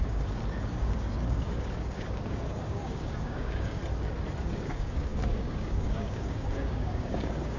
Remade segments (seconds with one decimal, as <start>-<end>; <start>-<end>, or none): 0.0-3.8; 4.4-7.6